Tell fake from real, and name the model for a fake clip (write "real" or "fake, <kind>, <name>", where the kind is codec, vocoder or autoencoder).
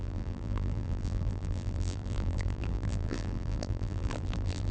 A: fake, vocoder, BigVGAN v2